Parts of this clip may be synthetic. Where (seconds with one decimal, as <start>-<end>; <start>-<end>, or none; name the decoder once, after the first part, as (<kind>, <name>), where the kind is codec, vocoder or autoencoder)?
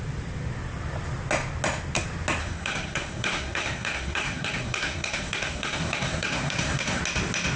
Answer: 2.4-7.0 (codec, SNAC)